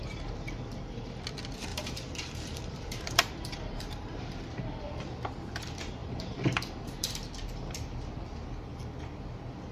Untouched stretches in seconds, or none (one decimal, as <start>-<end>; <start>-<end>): 0.0-1.7; 4.4-6.0; 7.1-9.7